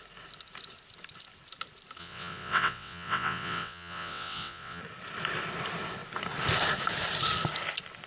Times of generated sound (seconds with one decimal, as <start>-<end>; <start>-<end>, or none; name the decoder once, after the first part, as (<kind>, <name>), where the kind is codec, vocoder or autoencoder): 2.0-4.8 (vocoder, WaveNeXt)